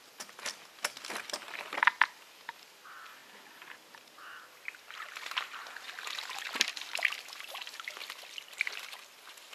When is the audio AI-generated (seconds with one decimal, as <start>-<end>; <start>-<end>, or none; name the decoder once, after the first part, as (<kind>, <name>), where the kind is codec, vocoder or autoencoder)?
none